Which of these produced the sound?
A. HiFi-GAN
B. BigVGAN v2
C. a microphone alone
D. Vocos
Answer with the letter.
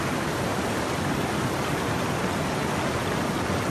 C